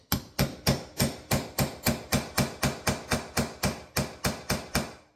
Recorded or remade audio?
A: recorded